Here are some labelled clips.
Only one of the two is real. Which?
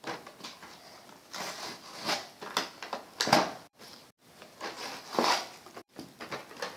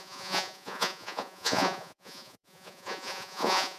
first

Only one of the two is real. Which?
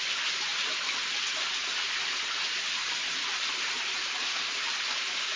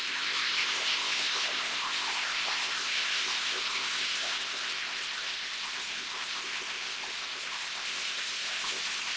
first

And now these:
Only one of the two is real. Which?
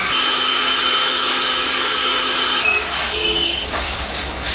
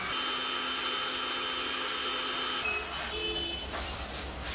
second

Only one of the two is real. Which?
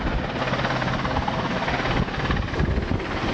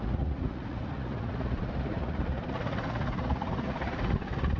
first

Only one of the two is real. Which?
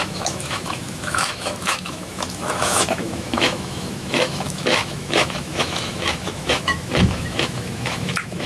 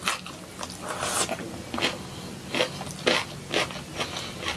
second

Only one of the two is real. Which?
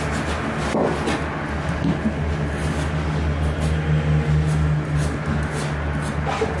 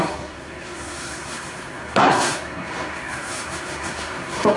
first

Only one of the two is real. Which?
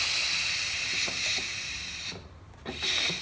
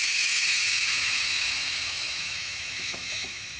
first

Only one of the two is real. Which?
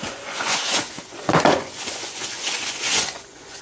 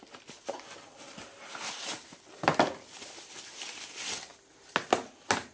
second